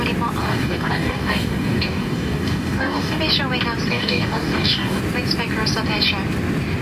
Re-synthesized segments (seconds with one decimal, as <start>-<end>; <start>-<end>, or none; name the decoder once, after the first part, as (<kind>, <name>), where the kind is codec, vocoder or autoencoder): 0.4-3.2 (codec, DAC); 3.9-5.0